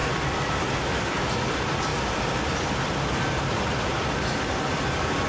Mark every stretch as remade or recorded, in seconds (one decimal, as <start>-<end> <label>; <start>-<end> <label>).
0.0-0.6 remade; 0.6-1.9 recorded; 1.9-3.7 remade; 3.7-4.7 recorded; 4.7-5.3 remade